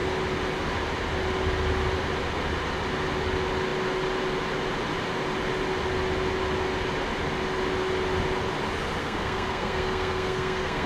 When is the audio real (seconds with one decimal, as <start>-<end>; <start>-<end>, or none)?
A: 0.0-9.0